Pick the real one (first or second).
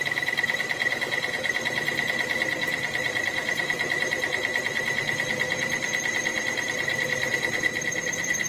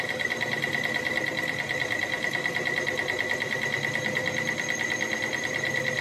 second